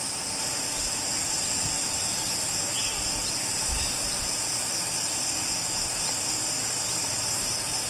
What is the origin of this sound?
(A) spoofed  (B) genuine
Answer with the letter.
B